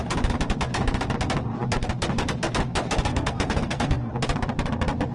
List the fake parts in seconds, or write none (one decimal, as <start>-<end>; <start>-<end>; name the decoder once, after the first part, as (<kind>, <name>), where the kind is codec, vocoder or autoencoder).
3.1-4.1 (codec, SNAC)